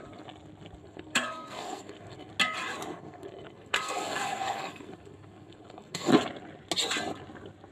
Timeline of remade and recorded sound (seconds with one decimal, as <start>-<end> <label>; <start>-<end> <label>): 0.0-0.8 recorded; 0.8-2.3 remade; 2.3-2.9 recorded; 2.9-6.1 remade; 6.1-7.7 recorded